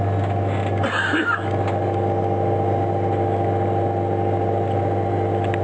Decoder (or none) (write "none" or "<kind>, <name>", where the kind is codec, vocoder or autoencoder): none